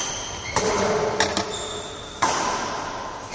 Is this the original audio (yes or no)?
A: yes